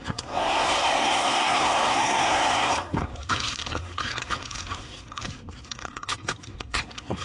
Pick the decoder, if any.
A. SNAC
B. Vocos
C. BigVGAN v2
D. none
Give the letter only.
A